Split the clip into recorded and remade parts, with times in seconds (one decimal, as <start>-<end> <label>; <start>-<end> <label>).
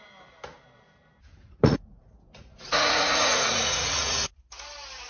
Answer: 0.0-1.3 recorded; 1.3-4.4 remade; 4.4-5.1 recorded